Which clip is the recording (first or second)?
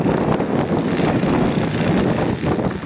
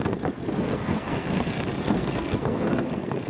first